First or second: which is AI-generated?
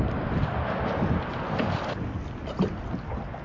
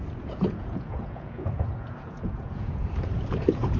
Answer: second